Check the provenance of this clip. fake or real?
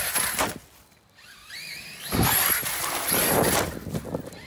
real